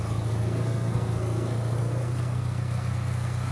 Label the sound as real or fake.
fake